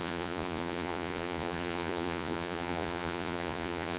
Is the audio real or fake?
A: fake